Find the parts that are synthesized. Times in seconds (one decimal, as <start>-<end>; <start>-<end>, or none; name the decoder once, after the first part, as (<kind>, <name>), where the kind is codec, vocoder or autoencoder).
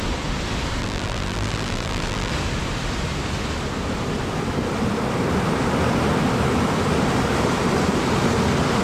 0.8-2.3 (vocoder, BigVGAN v2)